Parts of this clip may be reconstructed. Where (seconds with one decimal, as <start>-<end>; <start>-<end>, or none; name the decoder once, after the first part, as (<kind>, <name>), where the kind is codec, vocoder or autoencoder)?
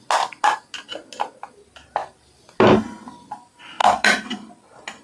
none